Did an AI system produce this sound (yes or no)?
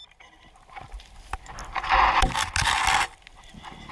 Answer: no